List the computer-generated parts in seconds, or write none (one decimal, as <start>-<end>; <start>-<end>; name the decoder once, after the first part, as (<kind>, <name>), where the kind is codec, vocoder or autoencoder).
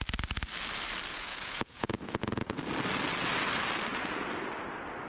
1.1-2.6 (vocoder, Vocos); 3.9-4.4